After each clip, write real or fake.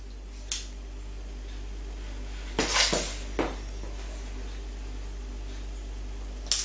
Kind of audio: real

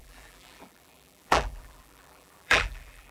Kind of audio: fake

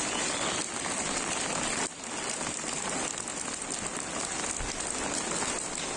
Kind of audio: real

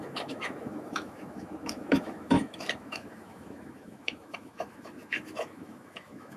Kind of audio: fake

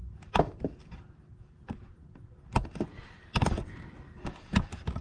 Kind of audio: real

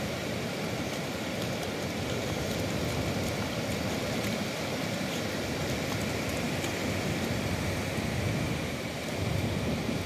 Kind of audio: real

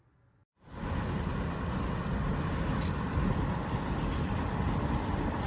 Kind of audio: real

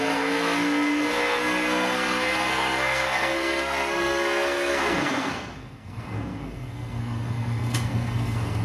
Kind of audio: fake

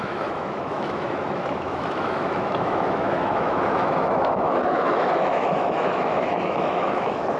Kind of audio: fake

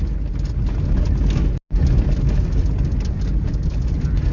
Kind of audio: real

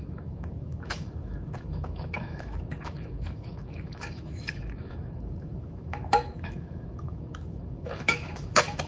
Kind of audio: fake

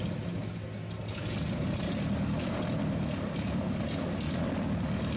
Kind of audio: real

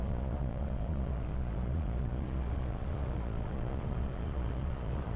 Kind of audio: fake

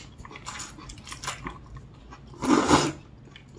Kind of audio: real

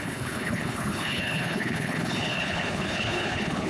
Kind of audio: fake